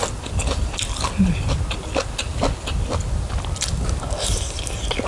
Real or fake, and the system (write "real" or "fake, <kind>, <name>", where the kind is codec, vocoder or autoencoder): real